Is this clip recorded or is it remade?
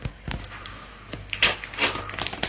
recorded